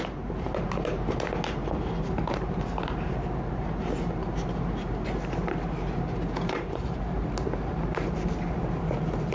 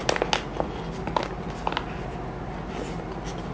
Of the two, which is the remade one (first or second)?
first